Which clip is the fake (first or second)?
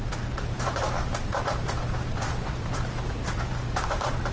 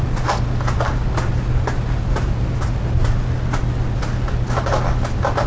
first